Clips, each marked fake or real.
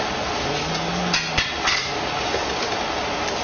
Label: real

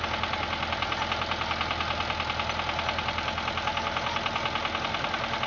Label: real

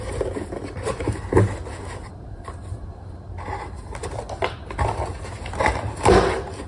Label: real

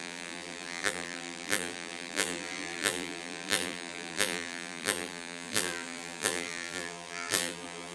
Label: fake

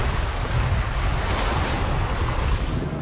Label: real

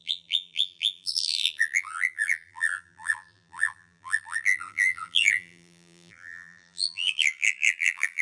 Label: fake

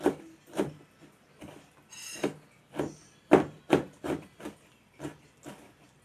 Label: real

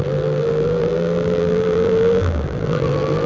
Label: fake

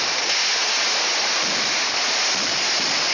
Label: real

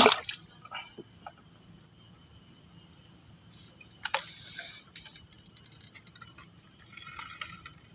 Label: real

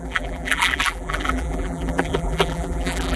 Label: fake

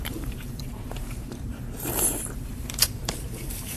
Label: fake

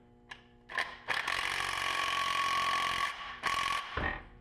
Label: real